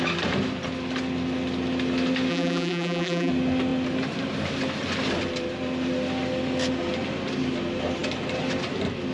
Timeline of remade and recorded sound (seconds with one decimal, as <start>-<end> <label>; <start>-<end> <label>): 0.0-2.3 recorded; 2.3-3.3 remade; 3.3-9.1 recorded